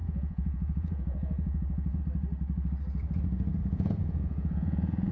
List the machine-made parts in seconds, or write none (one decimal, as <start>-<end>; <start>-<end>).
0.0-2.0; 3.6-5.1